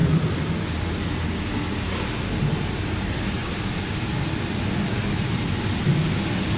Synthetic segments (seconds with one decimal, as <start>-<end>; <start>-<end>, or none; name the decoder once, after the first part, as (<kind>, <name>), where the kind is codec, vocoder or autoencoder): none